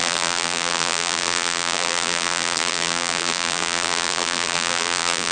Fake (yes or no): yes